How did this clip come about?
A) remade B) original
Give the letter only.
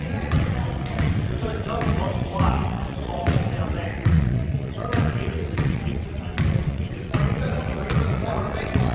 A